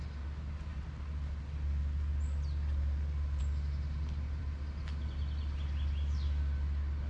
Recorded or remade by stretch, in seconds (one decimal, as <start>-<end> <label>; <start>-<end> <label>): 0.0-7.1 recorded